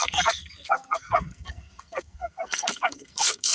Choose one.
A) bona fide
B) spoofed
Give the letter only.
B